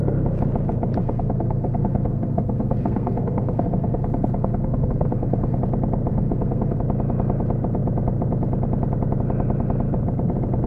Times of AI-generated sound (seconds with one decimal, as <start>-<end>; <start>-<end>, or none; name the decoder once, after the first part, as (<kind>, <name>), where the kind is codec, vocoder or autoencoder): 1.0-5.6 (codec, SNAC); 6.1-6.8

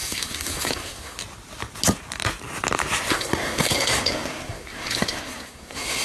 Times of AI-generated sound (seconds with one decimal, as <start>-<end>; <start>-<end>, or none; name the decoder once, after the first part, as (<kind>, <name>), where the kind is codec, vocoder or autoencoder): 0.0-1.2 (codec, SNAC); 3.1-6.0

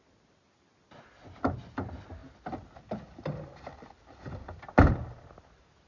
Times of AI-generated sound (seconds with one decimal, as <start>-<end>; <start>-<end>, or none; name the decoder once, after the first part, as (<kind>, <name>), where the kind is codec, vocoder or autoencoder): none

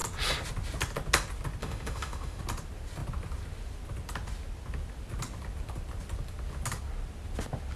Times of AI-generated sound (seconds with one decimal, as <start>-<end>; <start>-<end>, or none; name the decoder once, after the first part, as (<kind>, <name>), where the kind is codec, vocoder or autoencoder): 1.6-2.4 (autoencoder, DAC-VAE)